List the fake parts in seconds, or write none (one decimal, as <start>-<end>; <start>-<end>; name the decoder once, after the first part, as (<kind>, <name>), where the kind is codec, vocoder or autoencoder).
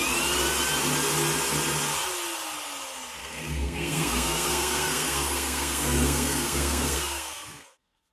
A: 3.2-8.1 (codec, SNAC)